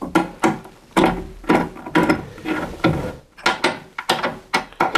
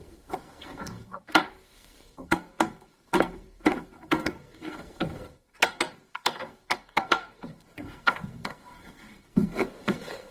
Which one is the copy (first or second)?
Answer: second